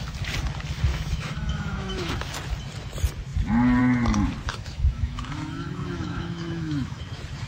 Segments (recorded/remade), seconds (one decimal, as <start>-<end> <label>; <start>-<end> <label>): 0.0-0.9 recorded; 0.9-2.1 remade; 2.1-4.5 recorded; 4.5-7.0 remade; 7.0-7.5 recorded